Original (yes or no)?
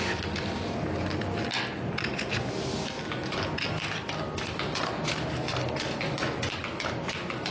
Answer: yes